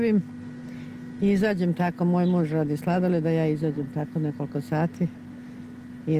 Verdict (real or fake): real